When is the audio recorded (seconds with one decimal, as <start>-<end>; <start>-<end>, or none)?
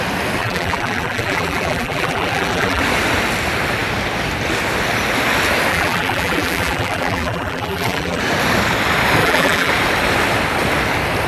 0.0-0.4; 2.8-5.7; 8.2-9.2; 9.7-11.3